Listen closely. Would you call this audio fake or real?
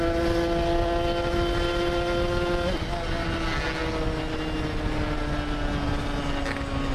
real